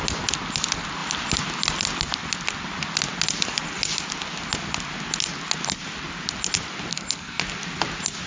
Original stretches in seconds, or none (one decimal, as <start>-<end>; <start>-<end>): 0.0-6.9; 7.4-8.3